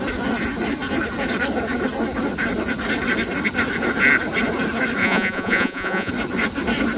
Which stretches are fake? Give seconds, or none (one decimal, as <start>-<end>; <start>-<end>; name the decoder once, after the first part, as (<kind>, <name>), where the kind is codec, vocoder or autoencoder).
5.0-6.1 (vocoder, Vocos)